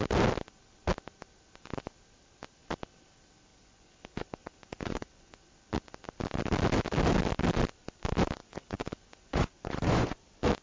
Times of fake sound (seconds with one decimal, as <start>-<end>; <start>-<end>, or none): 3.5-5.5; 8.4-10.2